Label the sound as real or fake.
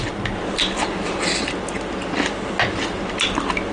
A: real